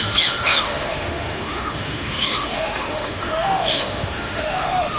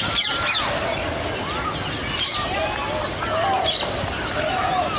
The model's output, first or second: first